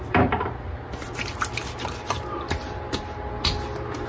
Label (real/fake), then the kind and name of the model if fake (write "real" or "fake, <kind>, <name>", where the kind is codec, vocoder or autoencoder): real